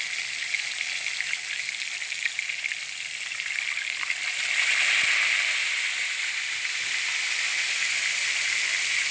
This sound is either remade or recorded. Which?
recorded